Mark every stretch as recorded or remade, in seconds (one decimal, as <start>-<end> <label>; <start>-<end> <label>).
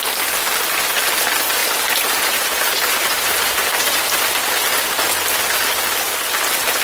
0.0-1.6 recorded; 1.6-4.0 remade; 4.0-6.8 recorded